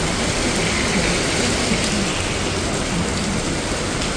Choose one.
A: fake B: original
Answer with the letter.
B